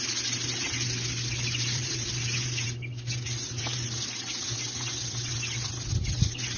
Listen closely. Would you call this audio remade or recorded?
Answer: recorded